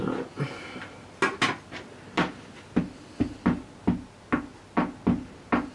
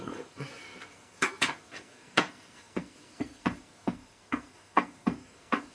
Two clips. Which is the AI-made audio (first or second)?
second